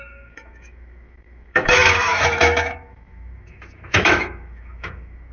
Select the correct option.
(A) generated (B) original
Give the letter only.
A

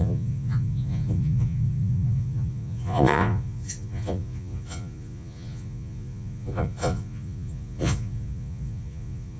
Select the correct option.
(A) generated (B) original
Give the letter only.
A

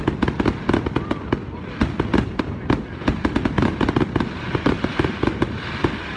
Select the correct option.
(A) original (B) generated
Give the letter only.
A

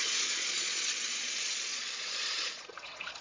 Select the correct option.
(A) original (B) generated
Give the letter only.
B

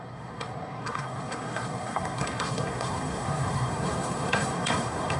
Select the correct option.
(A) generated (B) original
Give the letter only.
A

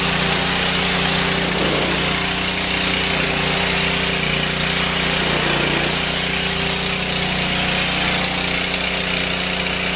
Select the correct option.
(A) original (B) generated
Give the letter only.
A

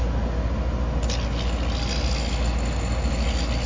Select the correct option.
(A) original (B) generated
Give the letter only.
A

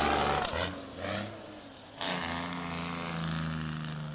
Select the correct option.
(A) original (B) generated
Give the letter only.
A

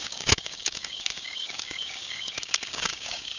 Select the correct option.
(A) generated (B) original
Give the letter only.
A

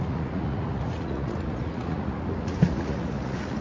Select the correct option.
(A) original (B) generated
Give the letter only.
B